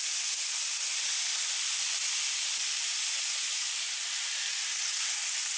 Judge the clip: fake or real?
real